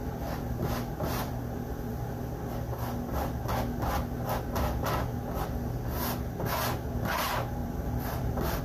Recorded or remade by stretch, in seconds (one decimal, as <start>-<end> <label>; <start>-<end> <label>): 0.0-2.3 remade; 2.3-7.6 recorded; 7.6-8.6 remade